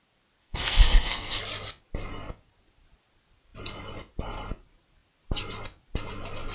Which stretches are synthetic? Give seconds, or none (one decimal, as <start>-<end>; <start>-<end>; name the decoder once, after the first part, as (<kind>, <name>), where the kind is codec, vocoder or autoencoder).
0.4-1.4 (codec, SNAC)